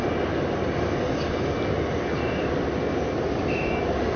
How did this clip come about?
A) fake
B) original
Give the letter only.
B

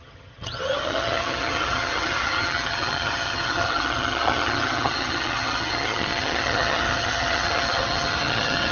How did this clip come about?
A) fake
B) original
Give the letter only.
A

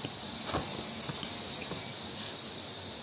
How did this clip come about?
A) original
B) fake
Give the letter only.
A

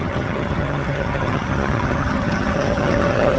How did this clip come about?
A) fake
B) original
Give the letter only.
A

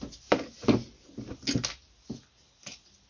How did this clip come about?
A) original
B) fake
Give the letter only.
A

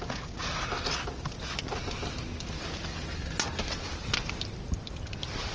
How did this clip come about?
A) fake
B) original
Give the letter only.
B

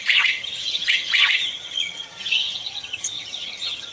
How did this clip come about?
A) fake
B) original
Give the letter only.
A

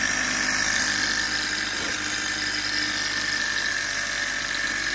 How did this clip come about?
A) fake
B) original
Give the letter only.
B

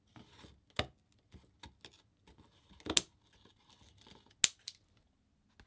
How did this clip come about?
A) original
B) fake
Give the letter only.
A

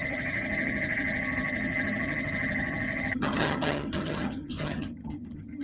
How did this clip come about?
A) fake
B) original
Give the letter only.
A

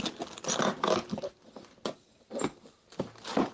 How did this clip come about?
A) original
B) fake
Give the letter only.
A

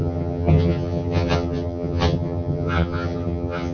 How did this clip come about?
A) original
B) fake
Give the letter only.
B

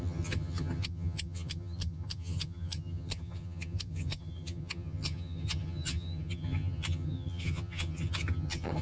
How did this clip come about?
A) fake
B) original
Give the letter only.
A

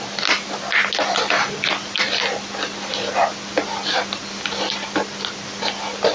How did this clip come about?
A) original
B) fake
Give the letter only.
A